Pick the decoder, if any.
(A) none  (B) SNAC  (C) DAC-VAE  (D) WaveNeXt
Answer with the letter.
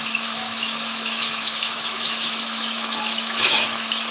C